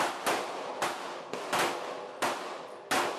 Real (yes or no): yes